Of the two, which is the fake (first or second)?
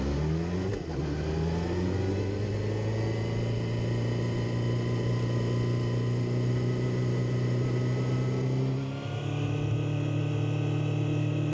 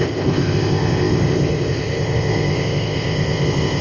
second